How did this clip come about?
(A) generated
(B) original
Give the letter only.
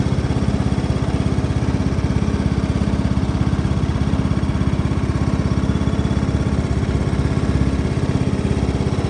B